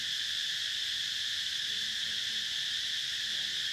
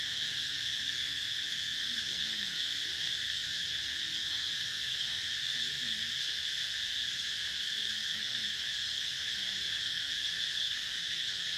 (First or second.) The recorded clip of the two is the first